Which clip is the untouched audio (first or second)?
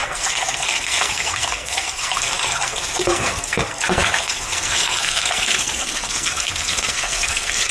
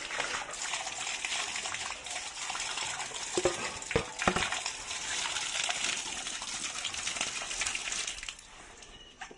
second